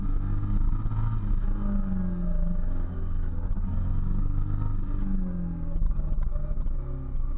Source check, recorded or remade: recorded